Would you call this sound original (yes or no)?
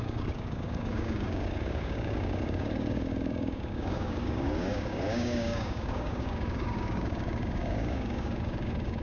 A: no